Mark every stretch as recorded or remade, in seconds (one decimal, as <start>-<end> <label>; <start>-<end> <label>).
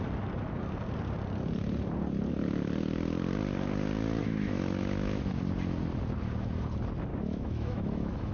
0.0-4.2 recorded; 4.2-5.3 remade; 5.3-7.1 recorded; 7.1-8.3 remade